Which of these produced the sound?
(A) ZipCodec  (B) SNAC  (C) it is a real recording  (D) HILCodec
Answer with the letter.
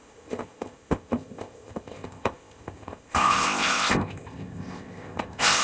A